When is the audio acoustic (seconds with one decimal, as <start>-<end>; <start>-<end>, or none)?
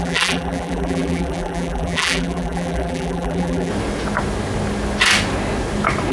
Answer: 3.7-6.1